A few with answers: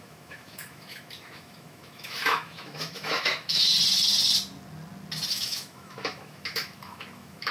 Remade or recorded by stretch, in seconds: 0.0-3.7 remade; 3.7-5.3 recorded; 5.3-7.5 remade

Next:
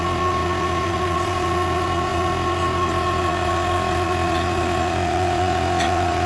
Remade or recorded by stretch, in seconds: 0.0-6.3 remade

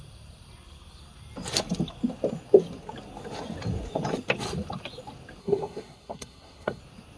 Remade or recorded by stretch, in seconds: 0.0-5.4 recorded; 5.4-6.8 remade; 6.8-7.2 recorded

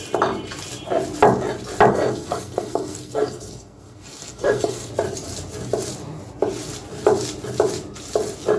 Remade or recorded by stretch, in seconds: 0.0-1.9 recorded; 1.9-4.9 remade; 4.9-8.6 recorded

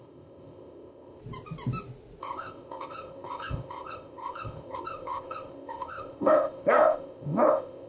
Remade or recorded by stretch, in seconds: 0.0-1.2 remade; 1.2-2.2 recorded; 2.2-7.9 remade

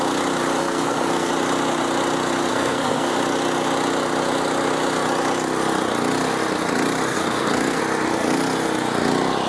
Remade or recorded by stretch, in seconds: 0.0-0.6 recorded; 0.6-1.3 remade; 1.3-2.5 recorded; 2.5-3.1 remade; 3.1-7.1 recorded; 7.1-7.8 remade; 7.8-9.5 recorded